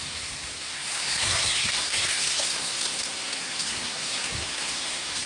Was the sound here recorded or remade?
remade